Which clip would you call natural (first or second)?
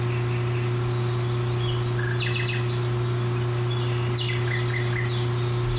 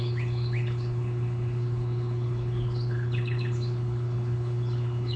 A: first